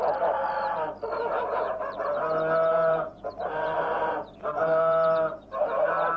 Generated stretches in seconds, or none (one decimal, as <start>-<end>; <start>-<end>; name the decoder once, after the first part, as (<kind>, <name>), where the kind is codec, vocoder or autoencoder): 2.7-5.5 (vocoder, BigVGAN v2)

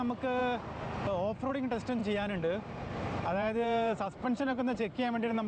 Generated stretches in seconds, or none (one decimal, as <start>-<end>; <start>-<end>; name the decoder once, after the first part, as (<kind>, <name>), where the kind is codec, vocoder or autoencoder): 2.0-5.5 (vocoder, BigVGAN v2)